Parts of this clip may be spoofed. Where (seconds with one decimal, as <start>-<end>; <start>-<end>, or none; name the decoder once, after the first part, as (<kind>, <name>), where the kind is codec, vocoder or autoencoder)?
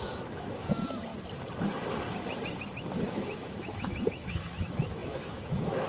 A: 0.0-1.1 (autoencoder, DAC-VAE); 3.1-5.9